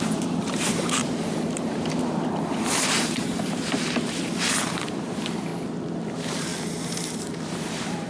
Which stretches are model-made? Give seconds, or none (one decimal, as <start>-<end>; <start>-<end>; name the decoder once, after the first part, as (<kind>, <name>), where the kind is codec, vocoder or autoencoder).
0.0-5.5 (vocoder, BigVGAN v2); 6.1-6.5; 7.0-8.1